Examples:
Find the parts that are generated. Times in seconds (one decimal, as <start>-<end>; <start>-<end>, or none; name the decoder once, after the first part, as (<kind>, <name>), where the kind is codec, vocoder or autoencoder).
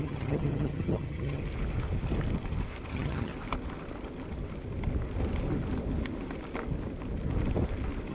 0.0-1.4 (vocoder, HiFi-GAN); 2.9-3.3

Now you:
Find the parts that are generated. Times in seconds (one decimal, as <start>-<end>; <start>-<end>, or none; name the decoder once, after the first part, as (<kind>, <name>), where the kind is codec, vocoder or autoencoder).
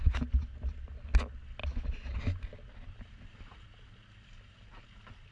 none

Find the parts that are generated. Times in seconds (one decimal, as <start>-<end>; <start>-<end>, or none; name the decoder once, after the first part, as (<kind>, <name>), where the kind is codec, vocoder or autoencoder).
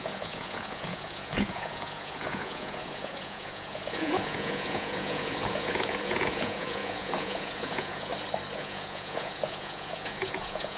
0.0-8.1 (vocoder, Vocos); 8.6-10.8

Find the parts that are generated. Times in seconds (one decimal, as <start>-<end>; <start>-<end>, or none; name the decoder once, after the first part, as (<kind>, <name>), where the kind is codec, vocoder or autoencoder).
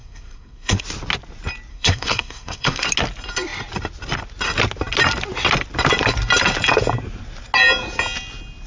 0.0-0.8 (codec, SNAC); 1.7-2.8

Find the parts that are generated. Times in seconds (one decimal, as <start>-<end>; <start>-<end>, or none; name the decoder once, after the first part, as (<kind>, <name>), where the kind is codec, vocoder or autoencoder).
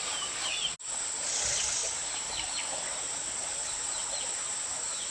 1.8-5.1 (vocoder, BigVGAN v2)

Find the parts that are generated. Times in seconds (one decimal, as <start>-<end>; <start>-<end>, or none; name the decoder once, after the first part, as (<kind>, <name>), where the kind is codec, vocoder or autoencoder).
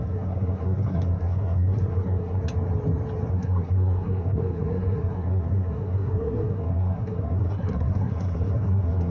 0.0-2.4 (codec, SNAC); 3.3-9.1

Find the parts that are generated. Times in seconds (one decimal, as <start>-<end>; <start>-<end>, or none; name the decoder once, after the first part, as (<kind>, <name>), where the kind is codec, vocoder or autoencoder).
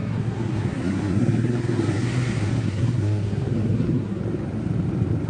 0.0-4.2 (codec, SNAC)